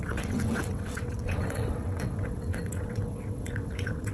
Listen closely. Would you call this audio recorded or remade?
remade